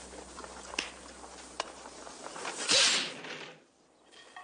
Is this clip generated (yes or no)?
no